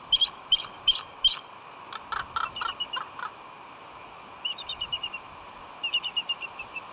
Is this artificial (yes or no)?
no